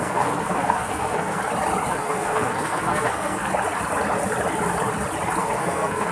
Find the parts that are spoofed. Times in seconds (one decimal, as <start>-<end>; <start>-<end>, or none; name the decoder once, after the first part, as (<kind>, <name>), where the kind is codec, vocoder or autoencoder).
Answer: 0.0-1.4 (codec, SNAC); 1.9-3.5; 5.4-6.1